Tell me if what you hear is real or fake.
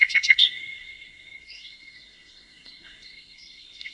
fake